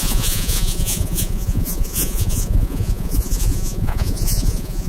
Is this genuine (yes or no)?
no